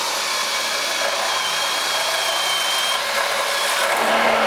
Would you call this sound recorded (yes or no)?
yes